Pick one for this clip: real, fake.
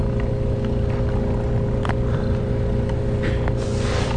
real